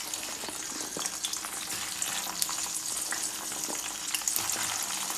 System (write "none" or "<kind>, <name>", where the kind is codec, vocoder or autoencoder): none